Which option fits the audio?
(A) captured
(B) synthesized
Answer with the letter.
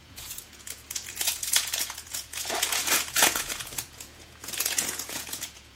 B